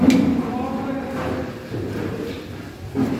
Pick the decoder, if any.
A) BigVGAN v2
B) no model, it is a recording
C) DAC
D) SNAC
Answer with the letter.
B